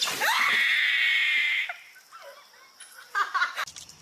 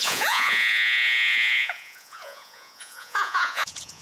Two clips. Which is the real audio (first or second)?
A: first